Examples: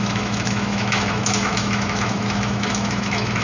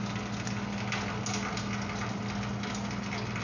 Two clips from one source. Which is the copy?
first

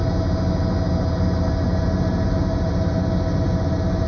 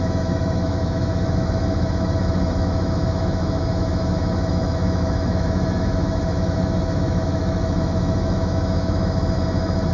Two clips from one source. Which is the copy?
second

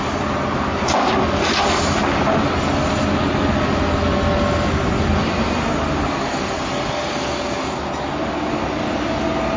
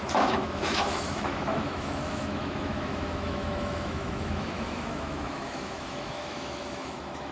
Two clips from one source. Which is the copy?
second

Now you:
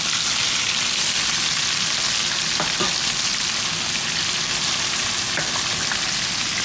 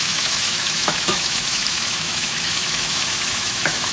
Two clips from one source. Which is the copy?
second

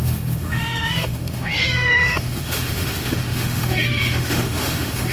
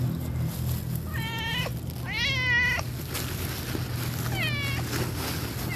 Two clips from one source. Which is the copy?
first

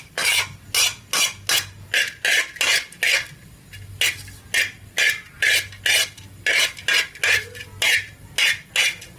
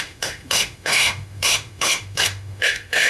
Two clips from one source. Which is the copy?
second